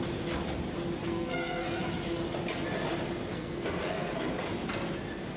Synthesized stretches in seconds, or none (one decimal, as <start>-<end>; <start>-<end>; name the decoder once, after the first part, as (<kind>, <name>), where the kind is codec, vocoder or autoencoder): 1.0-1.8 (codec, SNAC); 3.3-4.3